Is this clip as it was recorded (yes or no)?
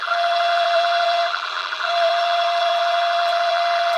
no